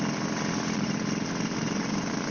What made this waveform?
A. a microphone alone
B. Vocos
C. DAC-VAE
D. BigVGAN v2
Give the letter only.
A